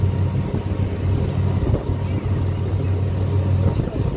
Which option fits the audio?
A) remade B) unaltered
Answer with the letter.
B